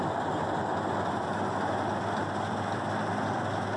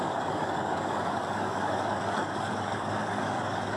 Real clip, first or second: first